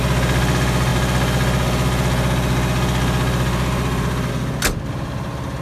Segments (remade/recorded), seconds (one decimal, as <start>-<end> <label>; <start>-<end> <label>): 0.0-5.6 recorded